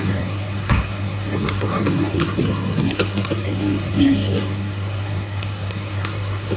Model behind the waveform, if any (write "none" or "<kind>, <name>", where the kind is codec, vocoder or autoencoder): codec, SNAC